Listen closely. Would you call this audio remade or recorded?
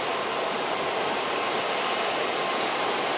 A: recorded